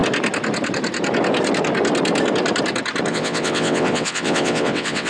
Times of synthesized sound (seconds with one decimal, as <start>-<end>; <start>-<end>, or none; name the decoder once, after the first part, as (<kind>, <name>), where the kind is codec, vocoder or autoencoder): 3.1-5.1 (vocoder, WaveNeXt)